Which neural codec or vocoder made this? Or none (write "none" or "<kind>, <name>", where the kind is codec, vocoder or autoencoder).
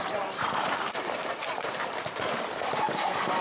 vocoder, BigVGAN v2